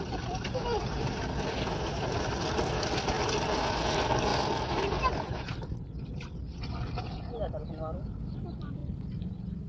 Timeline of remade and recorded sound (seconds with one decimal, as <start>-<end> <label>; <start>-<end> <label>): 0.0-4.3 recorded; 4.3-5.3 remade; 5.3-9.7 recorded